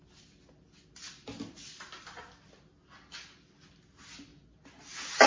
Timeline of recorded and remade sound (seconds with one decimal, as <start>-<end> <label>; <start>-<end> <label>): 0.0-5.3 recorded